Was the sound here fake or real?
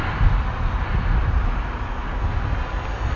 real